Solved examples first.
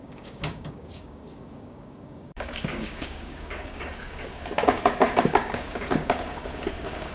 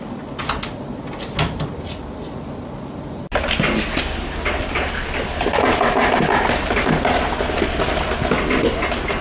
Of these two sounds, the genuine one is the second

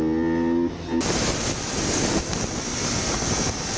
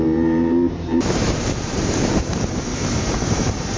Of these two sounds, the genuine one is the first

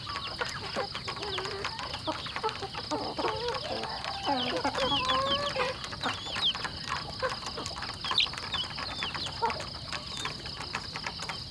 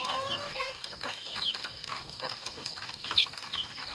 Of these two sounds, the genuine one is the first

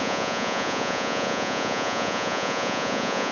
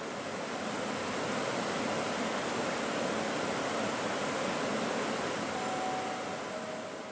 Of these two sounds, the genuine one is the second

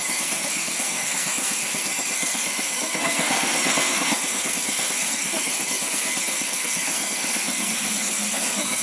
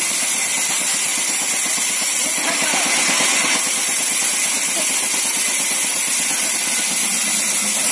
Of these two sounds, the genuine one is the second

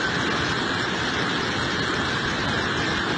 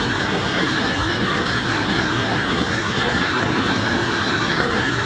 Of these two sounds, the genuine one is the first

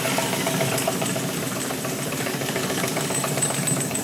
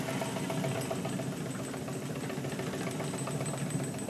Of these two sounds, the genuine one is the second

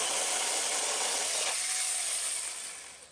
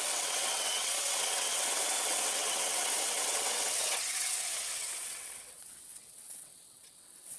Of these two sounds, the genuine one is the first